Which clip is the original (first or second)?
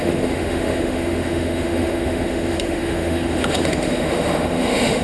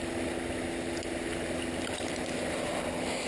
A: second